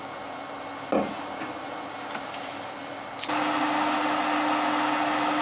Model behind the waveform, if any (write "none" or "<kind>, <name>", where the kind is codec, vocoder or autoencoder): none